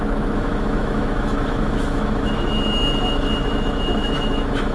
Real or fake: fake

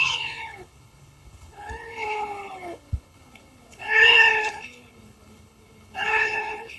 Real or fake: fake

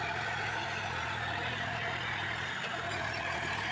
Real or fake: fake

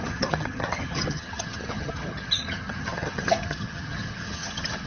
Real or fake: fake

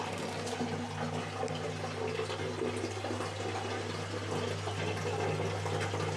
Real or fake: real